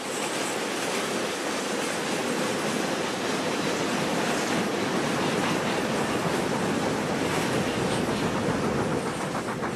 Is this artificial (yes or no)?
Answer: no